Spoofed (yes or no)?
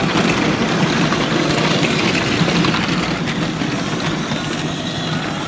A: no